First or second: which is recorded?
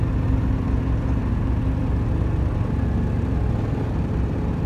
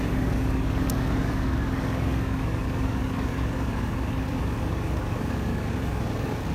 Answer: first